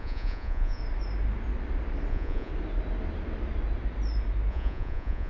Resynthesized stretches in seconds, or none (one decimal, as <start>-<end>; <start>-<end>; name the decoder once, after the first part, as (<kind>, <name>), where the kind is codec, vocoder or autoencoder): 0.0-0.8 (vocoder, Vocos); 2.1-2.5; 4.5-5.3